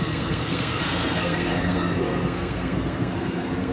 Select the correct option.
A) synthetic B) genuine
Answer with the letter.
A